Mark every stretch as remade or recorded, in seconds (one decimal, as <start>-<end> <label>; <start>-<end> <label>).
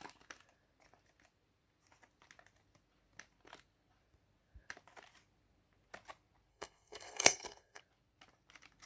0.0-6.5 recorded; 6.5-7.8 remade; 7.8-8.9 recorded